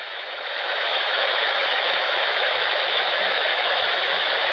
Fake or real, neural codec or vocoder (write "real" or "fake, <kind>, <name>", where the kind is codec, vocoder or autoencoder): fake, autoencoder, DAC-VAE